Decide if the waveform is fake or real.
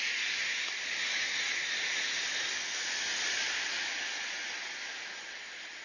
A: real